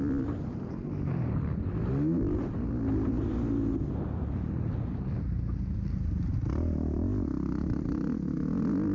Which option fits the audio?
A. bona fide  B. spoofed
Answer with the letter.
A